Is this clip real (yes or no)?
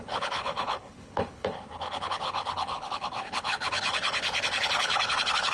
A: no